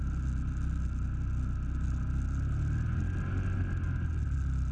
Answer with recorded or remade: recorded